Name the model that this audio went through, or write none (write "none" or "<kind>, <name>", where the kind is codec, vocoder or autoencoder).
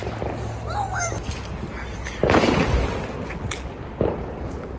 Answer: none